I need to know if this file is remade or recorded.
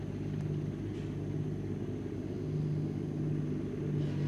recorded